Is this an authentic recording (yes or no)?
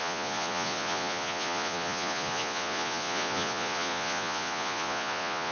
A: no